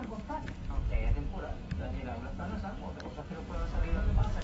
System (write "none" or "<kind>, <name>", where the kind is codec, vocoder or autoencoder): codec, DAC